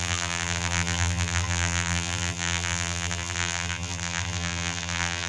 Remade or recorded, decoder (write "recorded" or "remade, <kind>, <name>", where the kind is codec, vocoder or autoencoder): remade, vocoder, BigVGAN v2